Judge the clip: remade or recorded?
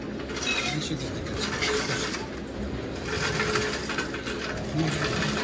recorded